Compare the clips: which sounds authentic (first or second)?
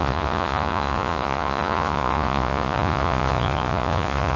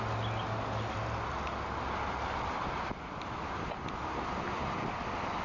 second